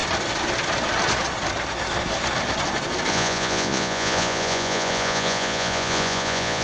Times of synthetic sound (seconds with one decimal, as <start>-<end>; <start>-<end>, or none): 3.1-6.6